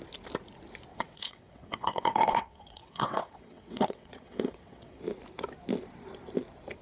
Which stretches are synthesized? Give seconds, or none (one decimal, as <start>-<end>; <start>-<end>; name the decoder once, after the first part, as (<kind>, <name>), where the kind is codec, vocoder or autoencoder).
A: 0.9-5.0 (vocoder, WaveNeXt)